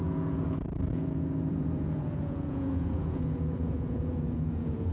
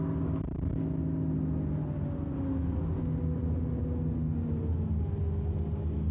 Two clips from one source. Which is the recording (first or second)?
second